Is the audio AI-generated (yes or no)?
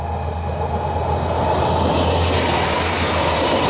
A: no